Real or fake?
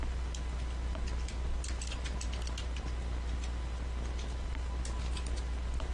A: real